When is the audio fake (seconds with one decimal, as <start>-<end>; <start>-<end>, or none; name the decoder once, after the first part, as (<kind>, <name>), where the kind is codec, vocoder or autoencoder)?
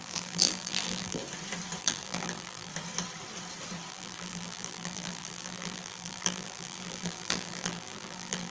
0.0-1.2 (vocoder, BigVGAN v2); 1.8-2.7; 3.9-8.5